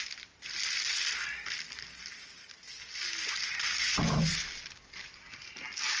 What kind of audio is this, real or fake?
real